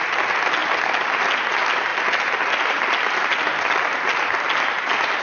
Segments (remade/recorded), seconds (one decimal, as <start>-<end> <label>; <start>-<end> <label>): 0.0-5.2 recorded